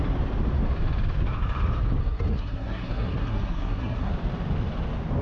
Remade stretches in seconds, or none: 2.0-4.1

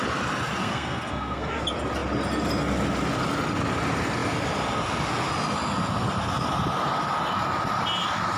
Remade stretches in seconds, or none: 0.6-1.6

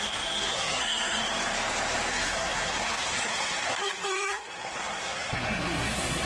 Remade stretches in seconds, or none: 0.0-1.2; 2.1-6.3

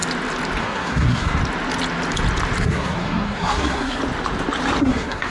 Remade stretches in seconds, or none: 0.6-1.4; 2.6-4.0; 4.8-5.3